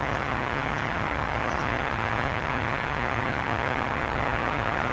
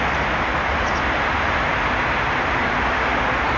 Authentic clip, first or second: second